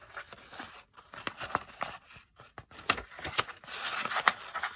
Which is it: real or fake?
real